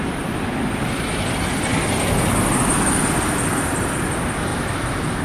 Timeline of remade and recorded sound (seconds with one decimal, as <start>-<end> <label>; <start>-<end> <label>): 0.0-4.5 recorded; 4.5-5.2 remade